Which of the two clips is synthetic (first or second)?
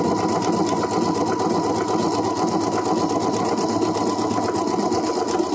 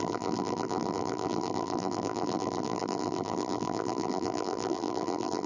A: second